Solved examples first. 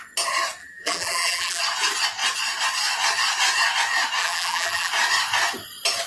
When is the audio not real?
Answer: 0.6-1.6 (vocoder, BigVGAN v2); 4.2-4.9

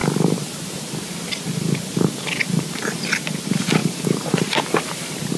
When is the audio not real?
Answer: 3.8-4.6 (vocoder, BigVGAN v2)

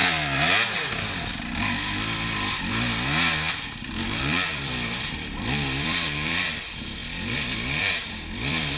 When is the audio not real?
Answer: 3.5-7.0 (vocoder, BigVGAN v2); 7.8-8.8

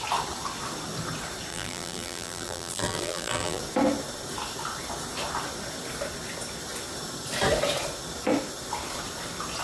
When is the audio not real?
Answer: 1.5-3.6 (vocoder, BigVGAN v2)

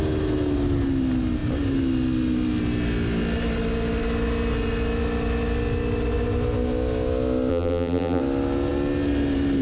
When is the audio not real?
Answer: 7.5-8.2 (vocoder, BigVGAN v2)